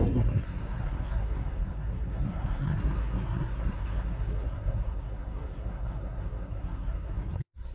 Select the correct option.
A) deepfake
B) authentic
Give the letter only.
A